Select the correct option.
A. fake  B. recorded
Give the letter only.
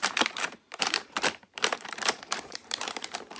A